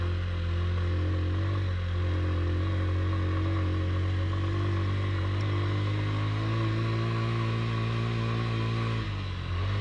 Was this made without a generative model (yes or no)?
yes